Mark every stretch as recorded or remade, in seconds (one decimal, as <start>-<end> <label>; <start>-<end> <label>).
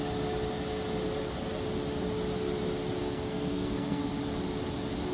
0.0-3.0 recorded; 3.0-4.1 remade; 4.1-5.1 recorded